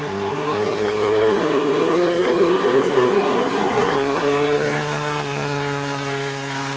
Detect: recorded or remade remade